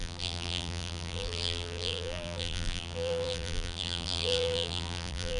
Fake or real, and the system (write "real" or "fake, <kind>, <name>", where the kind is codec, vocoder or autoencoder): fake, vocoder, BigVGAN v2